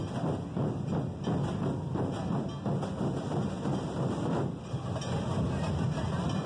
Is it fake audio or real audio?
real